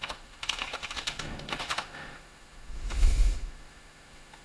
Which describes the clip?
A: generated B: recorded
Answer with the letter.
A